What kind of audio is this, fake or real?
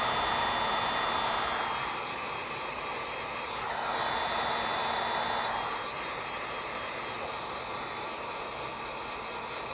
real